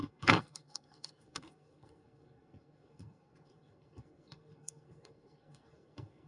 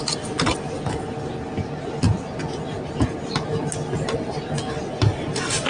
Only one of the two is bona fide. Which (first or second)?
second